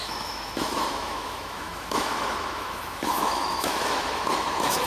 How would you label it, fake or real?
fake